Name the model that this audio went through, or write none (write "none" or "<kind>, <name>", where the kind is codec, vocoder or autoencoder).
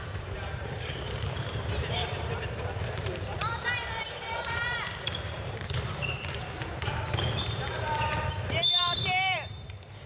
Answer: vocoder, BigVGAN v2